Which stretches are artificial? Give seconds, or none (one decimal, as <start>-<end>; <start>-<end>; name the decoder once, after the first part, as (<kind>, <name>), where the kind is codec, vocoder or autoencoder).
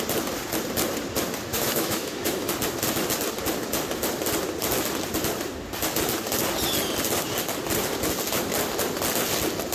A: 1.5-2.5 (autoencoder, DAC-VAE)